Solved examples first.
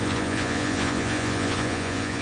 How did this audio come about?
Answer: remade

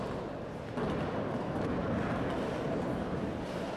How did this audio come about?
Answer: recorded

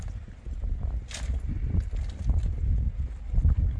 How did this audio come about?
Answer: recorded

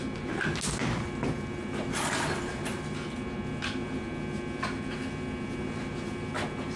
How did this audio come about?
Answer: recorded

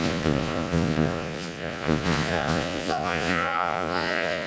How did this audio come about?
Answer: remade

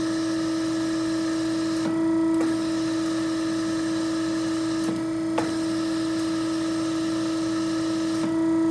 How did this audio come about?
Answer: recorded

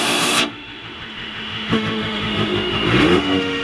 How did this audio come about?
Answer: remade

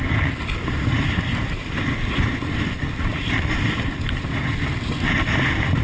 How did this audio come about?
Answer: recorded